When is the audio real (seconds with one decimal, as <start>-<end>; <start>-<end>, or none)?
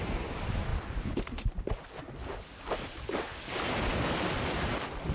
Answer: 0.0-5.1